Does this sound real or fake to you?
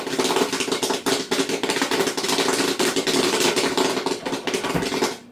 real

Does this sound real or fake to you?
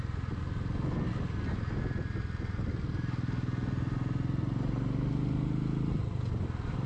real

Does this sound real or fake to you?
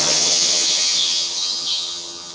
fake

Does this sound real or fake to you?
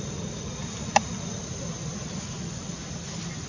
real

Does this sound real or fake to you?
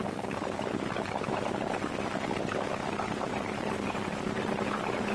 fake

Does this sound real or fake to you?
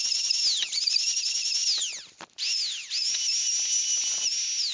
real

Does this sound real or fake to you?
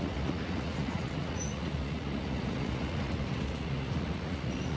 fake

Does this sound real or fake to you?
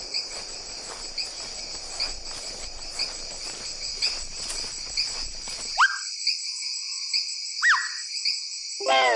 real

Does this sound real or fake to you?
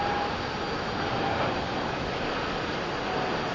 real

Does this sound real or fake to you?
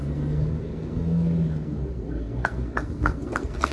fake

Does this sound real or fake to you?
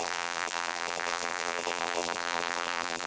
fake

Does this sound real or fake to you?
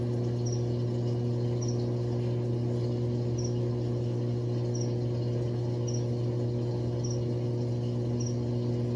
real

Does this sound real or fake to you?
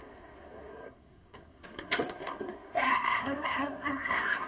fake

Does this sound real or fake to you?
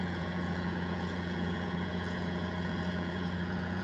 fake